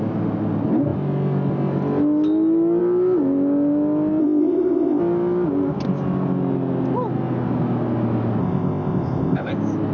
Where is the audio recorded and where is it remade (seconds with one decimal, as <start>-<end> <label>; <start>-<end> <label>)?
0.0-4.2 recorded; 4.2-5.0 remade; 5.0-8.4 recorded; 8.4-9.5 remade; 9.5-9.9 recorded